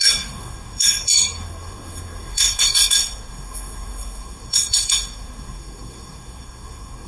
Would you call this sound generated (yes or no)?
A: yes